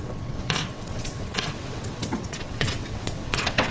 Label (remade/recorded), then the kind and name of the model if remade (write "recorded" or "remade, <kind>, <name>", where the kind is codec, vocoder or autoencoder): remade, vocoder, WaveNeXt